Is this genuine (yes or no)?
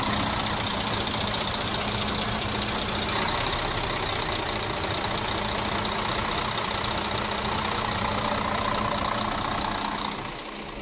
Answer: yes